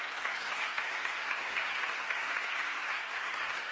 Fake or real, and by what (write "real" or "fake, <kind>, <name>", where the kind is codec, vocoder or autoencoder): fake, codec, SNAC